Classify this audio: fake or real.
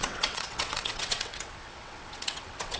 fake